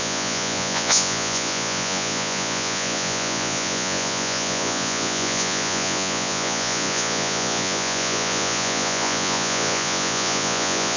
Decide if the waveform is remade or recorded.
remade